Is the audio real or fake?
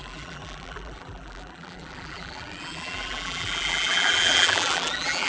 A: fake